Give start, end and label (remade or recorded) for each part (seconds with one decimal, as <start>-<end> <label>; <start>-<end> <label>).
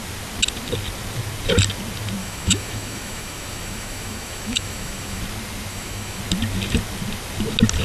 0.0-2.2 recorded; 2.2-5.2 remade; 5.2-5.7 recorded; 5.7-6.2 remade; 6.2-7.8 recorded